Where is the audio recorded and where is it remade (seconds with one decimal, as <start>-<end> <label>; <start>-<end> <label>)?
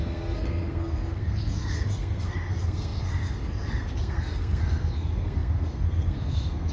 0.0-6.7 remade